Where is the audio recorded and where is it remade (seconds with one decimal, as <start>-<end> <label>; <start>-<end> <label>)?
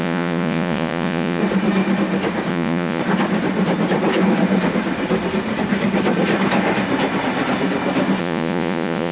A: 0.0-1.4 remade; 1.4-2.5 recorded; 2.5-3.0 remade; 3.0-8.2 recorded; 8.2-9.1 remade